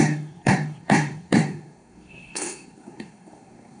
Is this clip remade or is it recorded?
remade